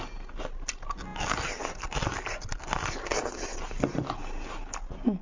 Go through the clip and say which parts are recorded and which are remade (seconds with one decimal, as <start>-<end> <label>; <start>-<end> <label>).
0.0-5.2 recorded